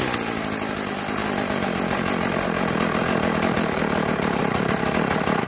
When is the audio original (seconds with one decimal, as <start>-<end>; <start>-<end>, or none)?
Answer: 0.0-5.5